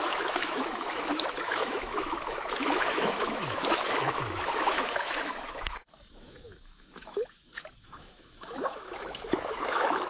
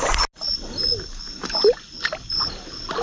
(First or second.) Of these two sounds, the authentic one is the second